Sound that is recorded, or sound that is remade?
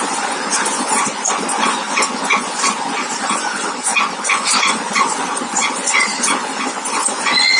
remade